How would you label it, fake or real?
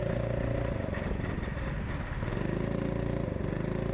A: real